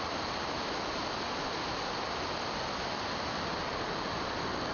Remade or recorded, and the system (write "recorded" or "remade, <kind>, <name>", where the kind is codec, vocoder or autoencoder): recorded